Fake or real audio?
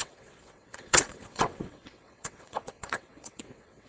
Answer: fake